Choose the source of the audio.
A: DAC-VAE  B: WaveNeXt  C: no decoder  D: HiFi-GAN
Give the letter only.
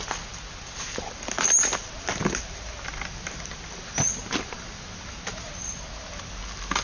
C